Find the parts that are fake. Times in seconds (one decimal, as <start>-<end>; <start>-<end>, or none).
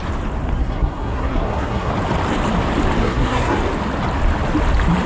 0.6-1.9; 3.0-3.6